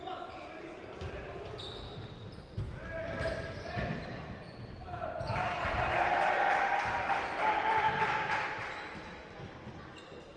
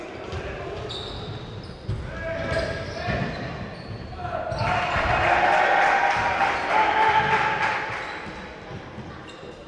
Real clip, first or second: second